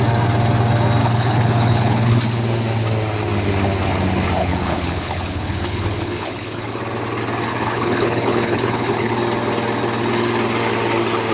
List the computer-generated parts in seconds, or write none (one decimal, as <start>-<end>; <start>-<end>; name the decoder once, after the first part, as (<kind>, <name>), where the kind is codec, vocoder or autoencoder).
1.0-2.2 (codec, HILCodec); 4.4-6.8; 7.5-9.1

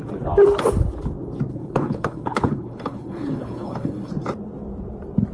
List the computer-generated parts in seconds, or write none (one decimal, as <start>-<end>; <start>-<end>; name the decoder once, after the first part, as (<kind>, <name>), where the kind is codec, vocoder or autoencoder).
1.5-4.1 (codec, HILCodec)

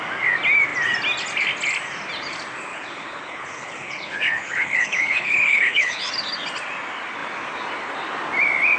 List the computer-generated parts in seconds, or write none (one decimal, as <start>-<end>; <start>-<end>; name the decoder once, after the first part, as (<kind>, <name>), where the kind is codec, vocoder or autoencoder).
2.7-6.1 (codec, HILCodec)